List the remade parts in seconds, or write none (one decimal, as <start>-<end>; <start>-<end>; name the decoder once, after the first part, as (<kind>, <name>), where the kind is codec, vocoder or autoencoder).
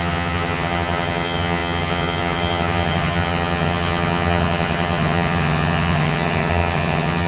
0.0-7.3 (vocoder, HiFi-GAN)